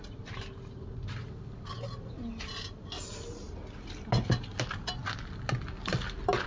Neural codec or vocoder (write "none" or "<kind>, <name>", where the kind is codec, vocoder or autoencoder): none